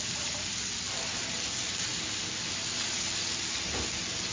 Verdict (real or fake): real